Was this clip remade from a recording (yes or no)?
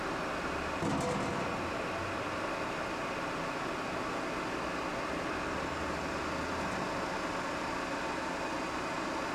no